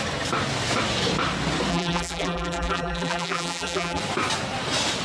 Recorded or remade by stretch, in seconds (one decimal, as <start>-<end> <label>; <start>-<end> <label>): 0.0-1.7 recorded; 1.7-4.0 remade; 4.0-5.0 recorded